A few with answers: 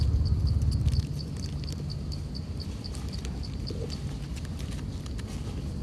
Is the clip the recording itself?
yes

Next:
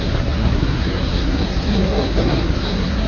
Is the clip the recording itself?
no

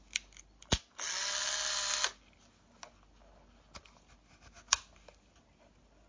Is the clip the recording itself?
yes